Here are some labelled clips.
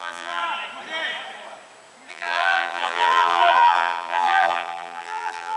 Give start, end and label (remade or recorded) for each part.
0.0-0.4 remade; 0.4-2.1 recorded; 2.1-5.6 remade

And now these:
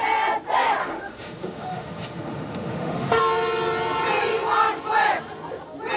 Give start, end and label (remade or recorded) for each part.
0.0-0.8 recorded; 0.8-3.2 remade; 3.2-6.0 recorded

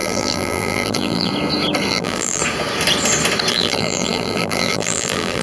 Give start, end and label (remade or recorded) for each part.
0.0-1.3 remade; 1.3-1.9 recorded; 1.9-2.4 remade; 2.4-3.5 recorded; 3.5-5.4 remade

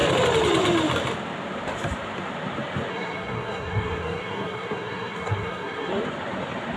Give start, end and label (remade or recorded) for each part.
0.0-2.9 recorded; 2.9-5.9 remade; 5.9-6.8 recorded